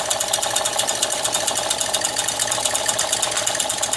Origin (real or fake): real